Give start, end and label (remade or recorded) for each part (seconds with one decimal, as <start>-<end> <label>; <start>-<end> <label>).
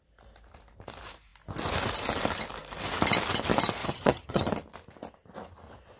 0.0-3.8 recorded; 3.8-4.4 remade; 4.4-6.0 recorded